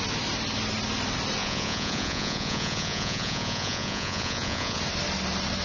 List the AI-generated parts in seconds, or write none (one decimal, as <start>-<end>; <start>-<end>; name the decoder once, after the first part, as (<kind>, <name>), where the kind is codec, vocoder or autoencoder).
1.4-4.8 (vocoder, Vocos)